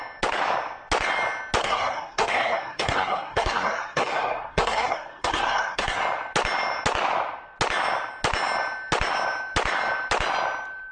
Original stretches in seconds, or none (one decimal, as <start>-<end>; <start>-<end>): 0.0-1.6; 6.0-10.9